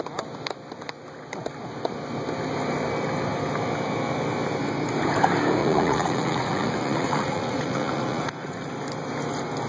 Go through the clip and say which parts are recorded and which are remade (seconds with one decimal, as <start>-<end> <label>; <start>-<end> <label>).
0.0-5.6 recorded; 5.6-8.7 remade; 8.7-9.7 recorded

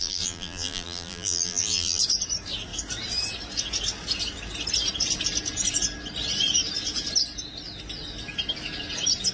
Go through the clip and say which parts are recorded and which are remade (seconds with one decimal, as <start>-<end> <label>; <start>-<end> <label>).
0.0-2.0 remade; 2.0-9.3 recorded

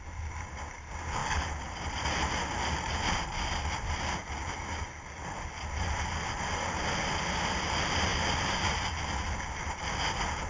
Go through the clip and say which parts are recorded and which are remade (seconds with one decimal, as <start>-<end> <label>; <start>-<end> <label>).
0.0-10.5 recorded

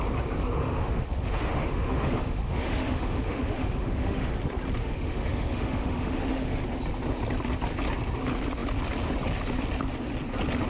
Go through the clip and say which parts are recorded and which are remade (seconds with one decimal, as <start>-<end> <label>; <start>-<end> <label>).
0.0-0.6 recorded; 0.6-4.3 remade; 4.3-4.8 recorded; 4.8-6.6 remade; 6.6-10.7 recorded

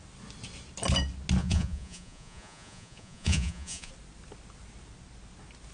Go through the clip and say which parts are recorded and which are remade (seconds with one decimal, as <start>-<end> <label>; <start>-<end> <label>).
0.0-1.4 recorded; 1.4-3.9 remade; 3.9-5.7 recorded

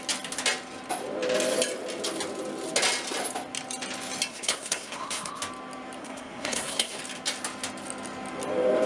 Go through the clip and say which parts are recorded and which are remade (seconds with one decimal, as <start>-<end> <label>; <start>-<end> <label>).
0.0-4.3 recorded; 4.3-5.4 remade; 5.4-6.0 recorded; 6.0-7.0 remade; 7.0-8.9 recorded

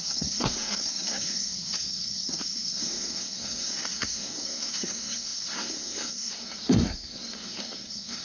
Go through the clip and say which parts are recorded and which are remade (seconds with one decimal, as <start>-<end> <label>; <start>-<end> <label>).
0.0-8.2 remade